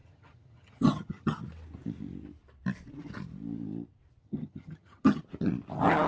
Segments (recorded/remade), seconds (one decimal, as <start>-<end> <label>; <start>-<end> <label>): 0.0-1.4 remade; 1.4-4.2 recorded; 4.2-5.2 remade; 5.2-6.1 recorded